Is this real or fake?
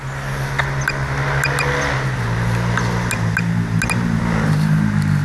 real